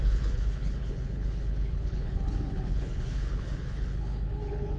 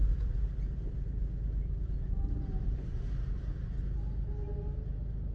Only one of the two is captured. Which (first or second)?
second